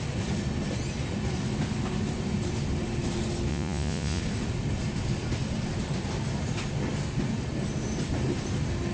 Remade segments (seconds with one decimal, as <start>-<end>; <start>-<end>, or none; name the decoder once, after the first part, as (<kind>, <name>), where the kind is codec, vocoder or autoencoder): 3.5-4.2 (vocoder, Vocos)